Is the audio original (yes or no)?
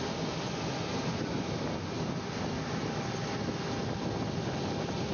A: yes